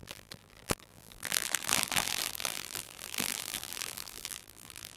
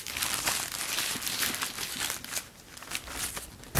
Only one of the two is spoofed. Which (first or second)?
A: first